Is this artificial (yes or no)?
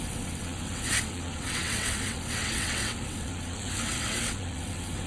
yes